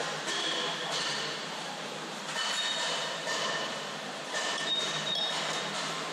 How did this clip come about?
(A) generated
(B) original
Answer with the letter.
A